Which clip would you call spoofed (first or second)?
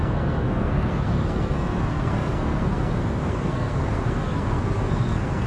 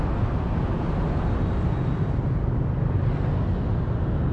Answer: first